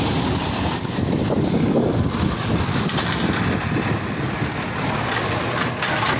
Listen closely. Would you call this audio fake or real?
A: real